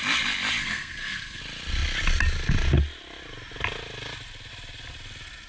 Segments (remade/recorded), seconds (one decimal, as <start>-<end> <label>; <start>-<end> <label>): 0.0-0.6 recorded; 0.6-1.4 remade; 1.4-5.5 recorded